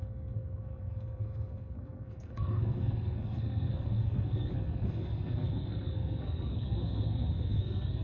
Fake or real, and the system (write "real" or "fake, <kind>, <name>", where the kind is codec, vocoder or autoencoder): fake, codec, SNAC